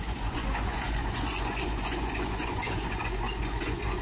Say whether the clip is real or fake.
fake